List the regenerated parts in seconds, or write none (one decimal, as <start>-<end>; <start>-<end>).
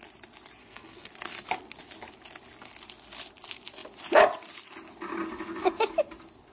0.6-1.1